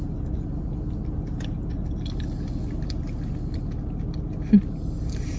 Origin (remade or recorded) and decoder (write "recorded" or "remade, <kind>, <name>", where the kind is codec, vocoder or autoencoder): recorded